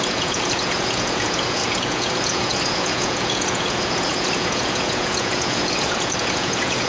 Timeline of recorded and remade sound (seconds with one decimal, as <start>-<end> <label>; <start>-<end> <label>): 0.0-6.9 remade